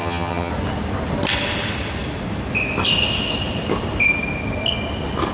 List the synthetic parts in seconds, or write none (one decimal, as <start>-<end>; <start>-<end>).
0.0-0.5